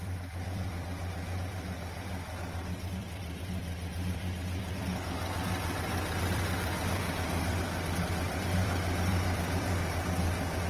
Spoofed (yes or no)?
yes